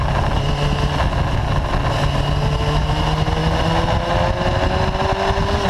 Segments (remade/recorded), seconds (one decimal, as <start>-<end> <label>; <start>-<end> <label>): 0.0-5.7 recorded